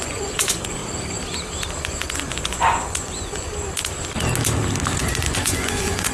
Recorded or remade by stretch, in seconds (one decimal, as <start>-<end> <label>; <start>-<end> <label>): 0.0-0.8 remade; 0.8-1.8 recorded; 1.8-3.5 remade; 3.5-5.0 recorded; 5.0-6.1 remade